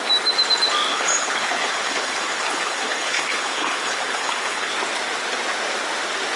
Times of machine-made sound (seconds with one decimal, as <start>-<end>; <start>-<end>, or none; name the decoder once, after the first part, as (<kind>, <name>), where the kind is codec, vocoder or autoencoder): 0.9-4.7 (codec, HILCodec)